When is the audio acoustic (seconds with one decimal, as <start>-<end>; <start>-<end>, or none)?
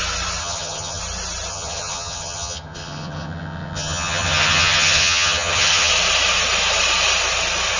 0.0-0.4; 1.0-1.5; 5.9-7.8